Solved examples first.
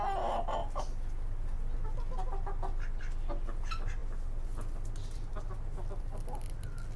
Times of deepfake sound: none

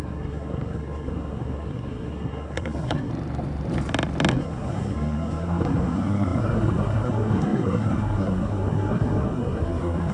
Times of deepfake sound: 0.0-3.1 (codec, SNAC); 4.3-10.1